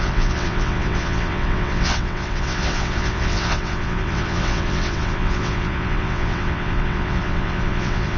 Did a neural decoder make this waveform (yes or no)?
yes